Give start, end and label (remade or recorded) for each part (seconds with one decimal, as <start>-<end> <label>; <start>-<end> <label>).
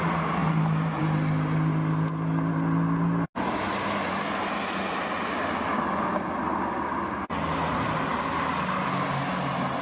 0.0-9.8 recorded